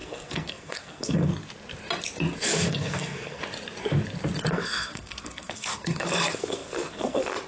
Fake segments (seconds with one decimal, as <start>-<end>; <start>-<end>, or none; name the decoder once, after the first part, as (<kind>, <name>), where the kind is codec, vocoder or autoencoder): 0.0-1.3 (codec, SNAC); 2.4-3.4; 4.5-7.5